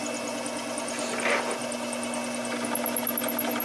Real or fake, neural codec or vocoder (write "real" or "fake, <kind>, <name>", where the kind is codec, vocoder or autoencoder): real